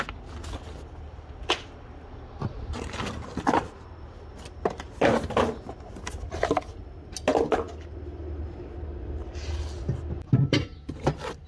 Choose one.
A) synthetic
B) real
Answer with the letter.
B